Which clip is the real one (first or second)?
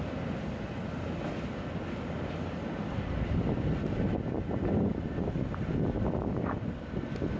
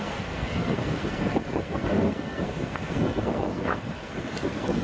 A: first